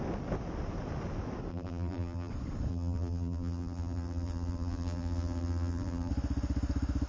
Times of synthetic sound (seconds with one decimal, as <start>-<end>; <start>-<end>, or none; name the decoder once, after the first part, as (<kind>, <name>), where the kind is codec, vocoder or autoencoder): 1.5-2.3 (vocoder, BigVGAN v2); 2.7-6.1